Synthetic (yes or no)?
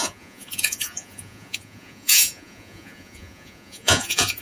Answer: yes